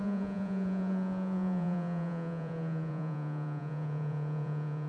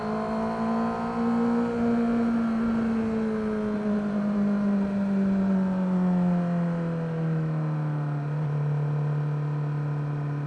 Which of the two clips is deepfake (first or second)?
first